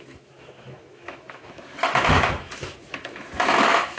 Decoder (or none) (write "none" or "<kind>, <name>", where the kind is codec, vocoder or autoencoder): autoencoder, DAC-VAE